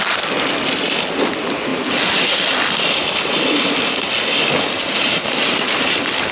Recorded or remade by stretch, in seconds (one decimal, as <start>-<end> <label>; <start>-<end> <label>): 0.0-6.3 recorded